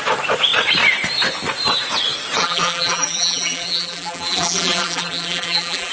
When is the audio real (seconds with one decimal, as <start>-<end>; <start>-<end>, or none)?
0.0-2.4